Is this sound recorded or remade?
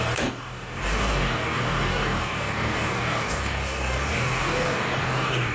remade